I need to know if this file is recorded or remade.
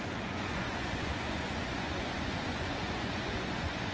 remade